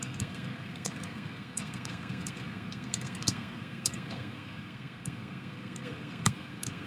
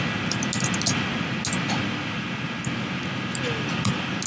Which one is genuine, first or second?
second